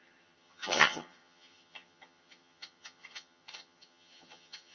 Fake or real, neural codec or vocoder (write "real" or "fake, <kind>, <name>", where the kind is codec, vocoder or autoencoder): fake, vocoder, HiFi-GAN